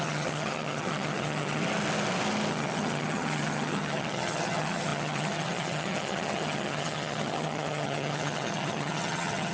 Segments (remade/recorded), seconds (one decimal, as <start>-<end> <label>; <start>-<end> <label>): 0.0-1.6 remade; 1.6-2.5 recorded; 2.5-9.5 remade